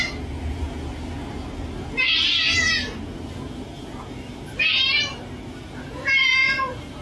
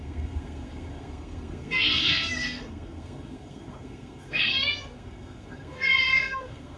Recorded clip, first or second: first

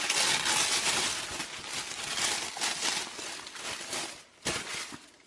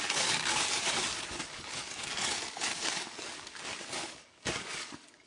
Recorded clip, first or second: first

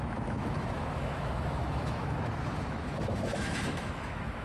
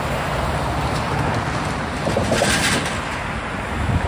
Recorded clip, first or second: second